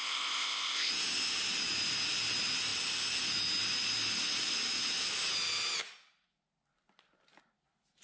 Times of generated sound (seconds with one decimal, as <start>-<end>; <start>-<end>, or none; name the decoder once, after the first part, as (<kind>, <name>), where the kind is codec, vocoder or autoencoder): 0.0-0.9 (codec, ZipCodec)